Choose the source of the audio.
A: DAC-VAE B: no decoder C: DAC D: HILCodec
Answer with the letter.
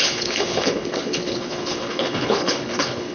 D